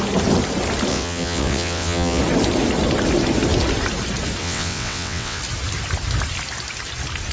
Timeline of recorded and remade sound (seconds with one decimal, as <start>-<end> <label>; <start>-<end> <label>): 0.0-0.9 recorded; 0.9-2.2 remade; 2.2-4.4 recorded; 4.4-5.4 remade; 5.4-7.3 recorded